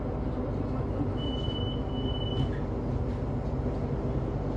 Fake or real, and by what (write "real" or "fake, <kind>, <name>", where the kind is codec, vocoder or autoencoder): real